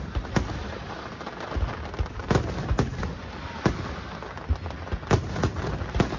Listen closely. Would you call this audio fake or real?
real